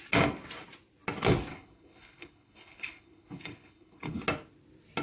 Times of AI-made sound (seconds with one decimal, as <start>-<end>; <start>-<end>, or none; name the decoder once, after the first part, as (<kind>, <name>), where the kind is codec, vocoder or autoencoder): 1.5-4.2 (codec, HILCodec)

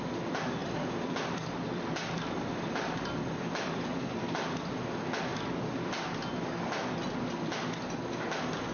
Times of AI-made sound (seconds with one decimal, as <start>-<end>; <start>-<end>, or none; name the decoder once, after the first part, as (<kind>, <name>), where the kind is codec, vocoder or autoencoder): 0.6-4.7 (vocoder, BigVGAN v2); 5.3-5.9